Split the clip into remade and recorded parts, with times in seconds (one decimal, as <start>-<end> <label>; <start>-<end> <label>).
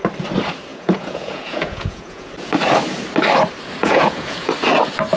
0.0-0.7 recorded; 0.7-2.3 remade; 2.3-3.8 recorded; 3.8-4.5 remade; 4.5-5.2 recorded